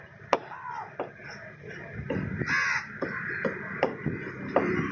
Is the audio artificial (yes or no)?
no